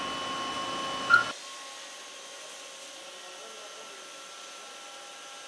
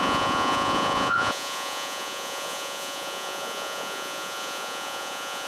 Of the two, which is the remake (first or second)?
second